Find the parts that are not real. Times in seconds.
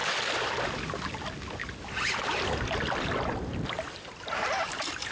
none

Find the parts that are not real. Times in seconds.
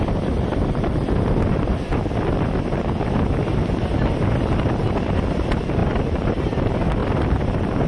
none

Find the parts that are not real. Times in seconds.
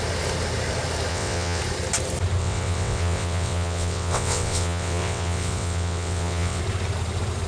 1.1-1.6 (vocoder, WaveNeXt); 2.4-6.6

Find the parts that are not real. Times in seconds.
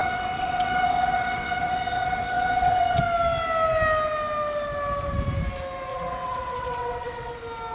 0.0-3.0 (vocoder, WaveNeXt); 5.9-7.3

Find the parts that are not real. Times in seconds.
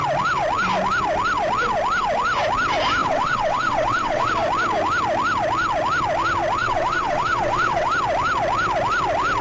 3.0-4.3 (vocoder, WaveNeXt); 6.6-7.9